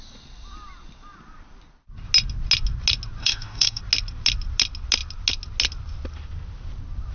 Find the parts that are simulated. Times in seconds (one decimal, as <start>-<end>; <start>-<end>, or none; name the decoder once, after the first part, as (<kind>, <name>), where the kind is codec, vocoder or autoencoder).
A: 3.2-3.8 (codec, DAC)